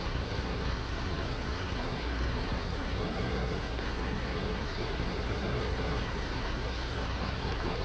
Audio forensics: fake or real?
fake